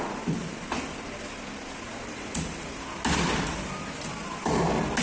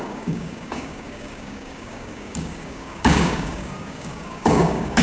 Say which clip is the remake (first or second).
second